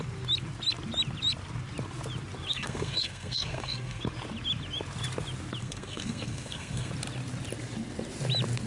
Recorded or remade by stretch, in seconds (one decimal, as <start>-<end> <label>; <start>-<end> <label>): 0.0-2.5 recorded; 2.5-4.0 remade; 4.0-5.6 recorded; 5.6-6.9 remade; 6.9-8.7 recorded